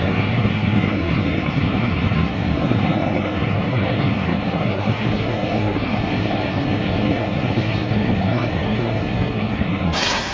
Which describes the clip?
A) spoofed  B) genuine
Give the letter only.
A